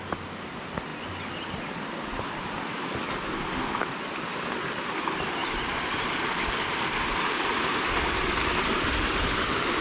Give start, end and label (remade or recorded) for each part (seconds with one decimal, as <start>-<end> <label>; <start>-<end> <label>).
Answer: 0.0-9.8 recorded